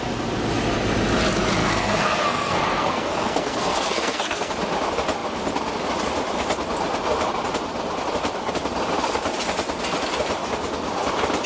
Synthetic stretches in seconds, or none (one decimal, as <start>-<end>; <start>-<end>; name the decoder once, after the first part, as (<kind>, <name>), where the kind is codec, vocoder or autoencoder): 1.6-4.5 (codec, SNAC)